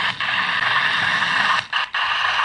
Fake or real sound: real